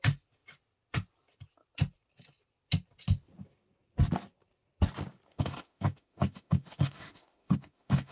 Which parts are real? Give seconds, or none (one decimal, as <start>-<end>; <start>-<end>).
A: 0.0-5.3